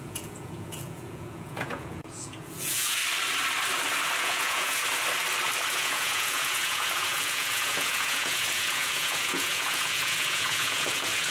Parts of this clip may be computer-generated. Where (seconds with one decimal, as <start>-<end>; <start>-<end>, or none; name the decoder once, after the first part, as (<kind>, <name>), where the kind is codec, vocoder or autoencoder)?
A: 0.0-3.0 (vocoder, Vocos); 4.2-4.8; 5.7-11.3